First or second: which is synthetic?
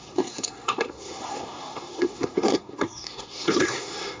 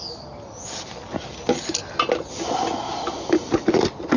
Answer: first